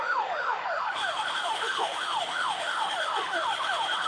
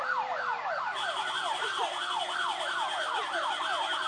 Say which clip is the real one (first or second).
second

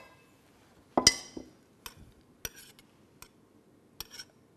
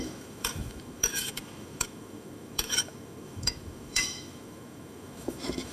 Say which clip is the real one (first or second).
first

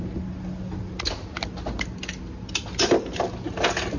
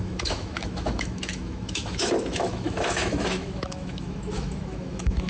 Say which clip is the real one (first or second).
first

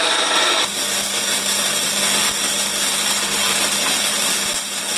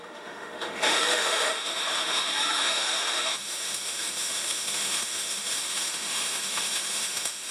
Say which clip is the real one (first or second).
first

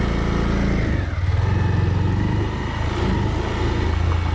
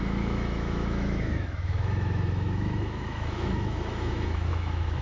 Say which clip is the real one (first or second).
first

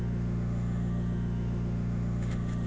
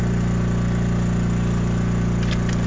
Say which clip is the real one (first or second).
second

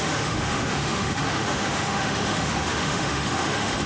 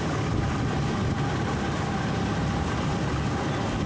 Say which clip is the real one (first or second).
second